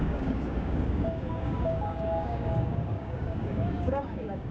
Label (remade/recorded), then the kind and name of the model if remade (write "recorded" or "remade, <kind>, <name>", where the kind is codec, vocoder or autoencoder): remade, codec, DAC